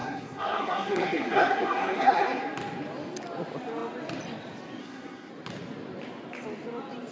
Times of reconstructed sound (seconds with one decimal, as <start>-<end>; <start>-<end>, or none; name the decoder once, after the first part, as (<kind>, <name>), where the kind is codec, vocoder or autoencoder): 0.0-2.4 (codec, SNAC); 4.8-5.3